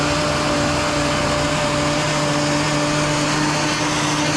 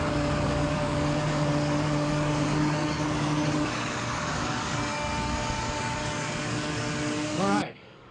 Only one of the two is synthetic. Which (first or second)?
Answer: second